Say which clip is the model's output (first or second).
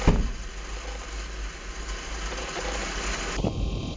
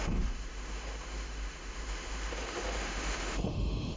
second